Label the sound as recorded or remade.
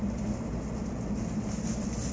recorded